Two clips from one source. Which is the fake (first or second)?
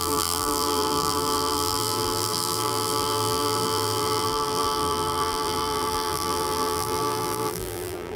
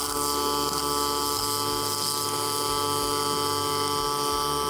first